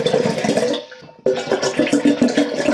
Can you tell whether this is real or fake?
real